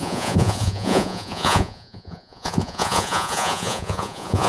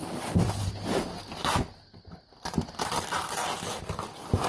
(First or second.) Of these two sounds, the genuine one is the second